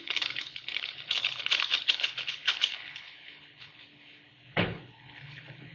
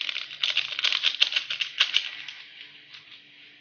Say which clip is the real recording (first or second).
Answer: second